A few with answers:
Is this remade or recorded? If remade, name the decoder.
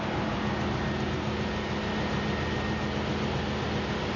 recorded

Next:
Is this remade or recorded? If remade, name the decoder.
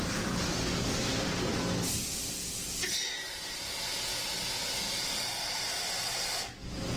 recorded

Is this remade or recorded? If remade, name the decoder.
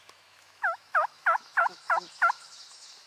remade, autoencoder, DAC-VAE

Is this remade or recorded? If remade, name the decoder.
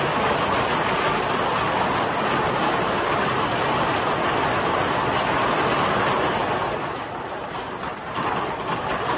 recorded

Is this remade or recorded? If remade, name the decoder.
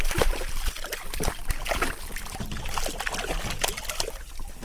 recorded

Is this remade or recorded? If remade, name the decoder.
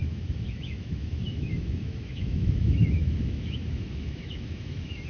remade, autoencoder, DAC-VAE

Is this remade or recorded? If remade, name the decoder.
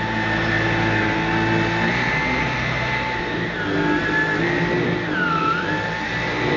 recorded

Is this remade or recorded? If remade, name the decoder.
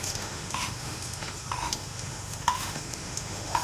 remade, autoencoder, DAC-VAE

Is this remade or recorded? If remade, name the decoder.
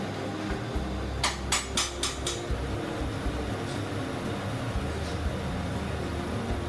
recorded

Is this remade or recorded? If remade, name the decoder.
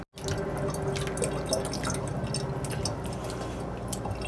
recorded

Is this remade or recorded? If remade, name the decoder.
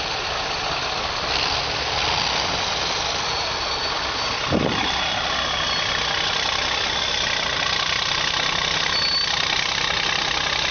recorded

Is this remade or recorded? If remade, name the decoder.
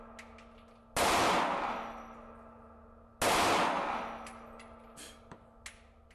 recorded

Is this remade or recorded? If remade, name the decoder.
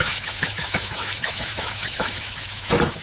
remade, autoencoder, DAC-VAE